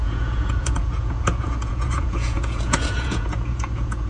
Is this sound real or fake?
fake